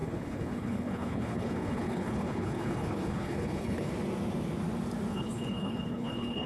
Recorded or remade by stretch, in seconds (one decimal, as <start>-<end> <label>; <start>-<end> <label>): 0.0-3.9 remade; 3.9-5.1 recorded; 5.1-6.5 remade